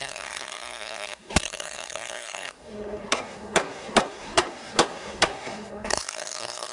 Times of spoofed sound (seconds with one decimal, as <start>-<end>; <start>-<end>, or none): 0.0-6.7